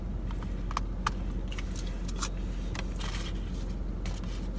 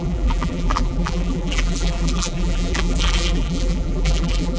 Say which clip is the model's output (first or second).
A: second